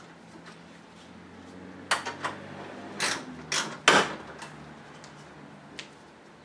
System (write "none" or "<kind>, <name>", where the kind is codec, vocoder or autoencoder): none